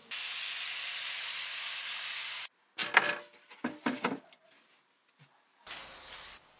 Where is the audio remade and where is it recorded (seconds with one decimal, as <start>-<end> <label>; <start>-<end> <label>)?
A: 0.0-6.6 recorded